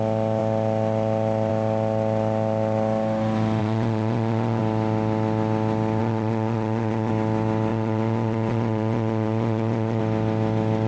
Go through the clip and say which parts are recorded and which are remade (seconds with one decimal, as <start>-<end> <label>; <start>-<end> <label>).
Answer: 0.0-3.6 recorded; 3.6-4.6 remade; 4.6-6.0 recorded; 6.0-7.1 remade; 7.1-7.7 recorded; 7.7-10.0 remade; 10.0-10.9 recorded